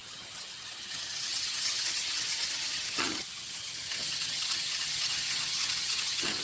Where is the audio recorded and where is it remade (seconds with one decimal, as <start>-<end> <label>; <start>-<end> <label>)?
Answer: 0.0-6.4 remade